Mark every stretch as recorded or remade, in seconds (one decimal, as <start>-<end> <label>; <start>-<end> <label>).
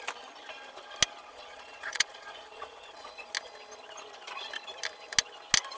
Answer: 0.0-1.2 recorded; 1.2-3.3 remade; 3.3-5.8 recorded